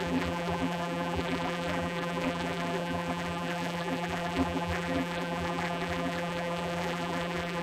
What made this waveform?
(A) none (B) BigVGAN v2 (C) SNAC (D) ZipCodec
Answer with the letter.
B